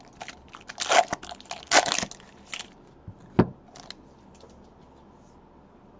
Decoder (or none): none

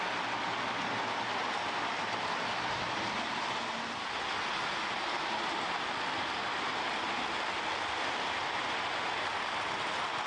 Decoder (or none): none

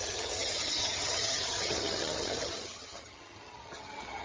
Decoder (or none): vocoder, HiFi-GAN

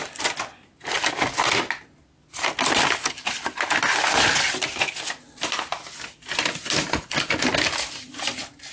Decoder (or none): none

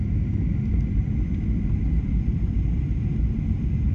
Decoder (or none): vocoder, BigVGAN v2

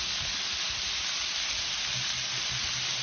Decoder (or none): none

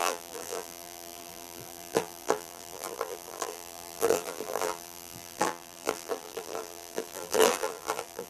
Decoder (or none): vocoder, BigVGAN v2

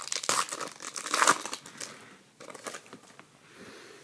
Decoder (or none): none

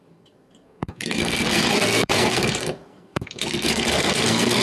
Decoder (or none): codec, SNAC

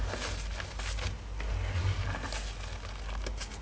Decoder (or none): none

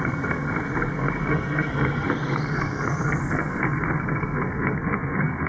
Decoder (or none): codec, SNAC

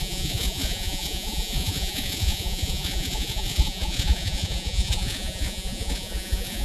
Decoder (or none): vocoder, Vocos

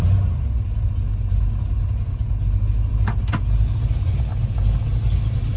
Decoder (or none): none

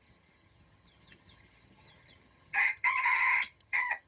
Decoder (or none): vocoder, HiFi-GAN